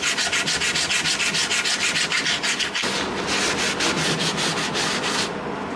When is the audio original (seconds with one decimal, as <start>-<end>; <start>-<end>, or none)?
0.0-5.8